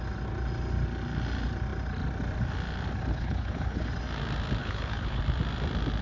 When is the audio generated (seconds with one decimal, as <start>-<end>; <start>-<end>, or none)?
3.1-3.9; 4.6-5.2